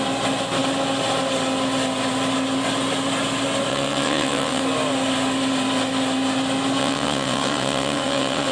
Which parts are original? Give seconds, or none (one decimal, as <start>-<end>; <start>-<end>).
0.0-3.7; 4.6-6.8